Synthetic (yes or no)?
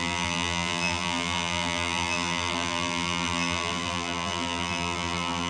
yes